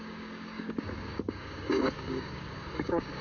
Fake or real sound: fake